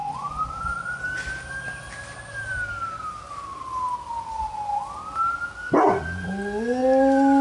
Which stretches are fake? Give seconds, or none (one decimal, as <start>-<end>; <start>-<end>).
0.0-1.0